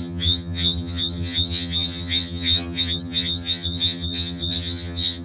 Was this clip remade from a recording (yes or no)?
yes